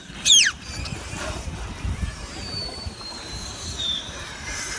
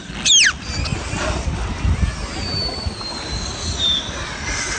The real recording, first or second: second